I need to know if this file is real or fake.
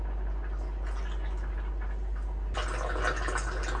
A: real